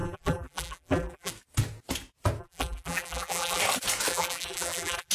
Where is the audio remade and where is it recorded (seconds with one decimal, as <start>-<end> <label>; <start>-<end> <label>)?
0.0-1.3 remade; 1.3-2.4 recorded; 2.4-3.6 remade; 3.6-4.1 recorded; 4.1-5.1 remade